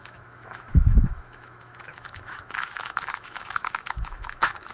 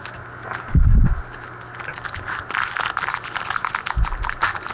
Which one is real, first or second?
second